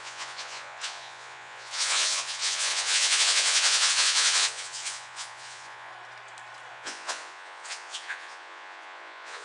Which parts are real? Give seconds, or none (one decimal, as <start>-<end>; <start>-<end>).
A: 5.9-6.7